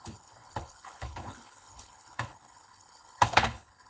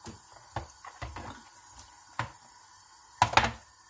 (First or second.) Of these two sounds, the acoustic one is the second